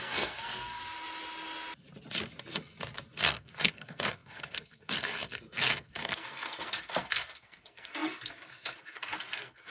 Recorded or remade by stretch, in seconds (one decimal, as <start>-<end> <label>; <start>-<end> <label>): 0.0-0.8 remade; 0.8-3.2 recorded; 3.2-9.7 remade